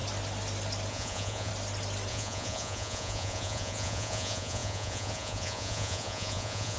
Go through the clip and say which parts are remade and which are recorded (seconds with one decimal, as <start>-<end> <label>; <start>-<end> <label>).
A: 0.0-0.9 recorded; 0.9-1.5 remade; 1.5-2.1 recorded; 2.1-6.8 remade